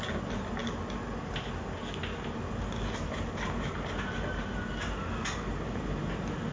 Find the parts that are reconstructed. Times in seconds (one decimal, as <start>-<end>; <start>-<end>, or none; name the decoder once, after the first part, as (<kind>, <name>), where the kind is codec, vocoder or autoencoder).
none